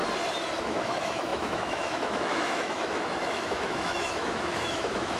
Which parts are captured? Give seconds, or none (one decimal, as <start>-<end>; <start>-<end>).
0.0-0.6